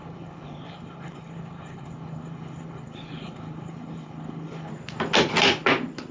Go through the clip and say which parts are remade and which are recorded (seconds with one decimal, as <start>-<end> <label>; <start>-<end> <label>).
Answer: 0.0-4.7 remade; 4.7-6.1 recorded

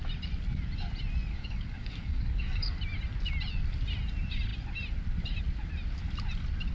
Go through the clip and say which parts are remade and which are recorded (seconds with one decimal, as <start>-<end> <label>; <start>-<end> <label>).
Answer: 0.0-1.3 recorded; 1.3-2.8 remade; 2.8-6.7 recorded

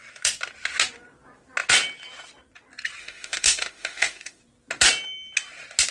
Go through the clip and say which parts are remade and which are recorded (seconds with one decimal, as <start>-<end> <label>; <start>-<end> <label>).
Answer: 0.0-3.0 recorded; 3.0-4.4 remade; 4.4-5.9 recorded

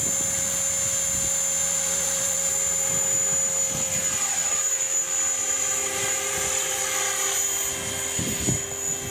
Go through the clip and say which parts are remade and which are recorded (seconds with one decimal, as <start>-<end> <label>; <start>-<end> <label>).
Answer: 0.0-1.6 recorded; 1.6-2.5 remade; 2.5-5.4 recorded; 5.4-6.8 remade; 6.8-9.1 recorded

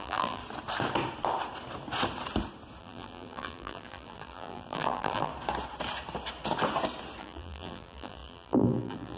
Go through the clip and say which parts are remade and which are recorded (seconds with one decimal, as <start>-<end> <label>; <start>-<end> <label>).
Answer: 0.0-0.4 remade; 0.4-2.8 recorded; 2.8-5.3 remade; 5.3-7.2 recorded; 7.2-9.2 remade